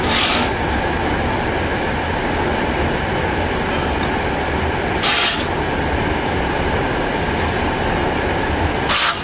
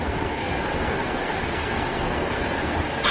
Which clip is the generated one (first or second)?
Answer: second